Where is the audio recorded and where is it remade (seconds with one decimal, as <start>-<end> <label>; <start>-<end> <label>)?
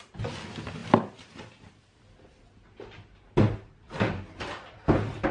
0.0-5.3 recorded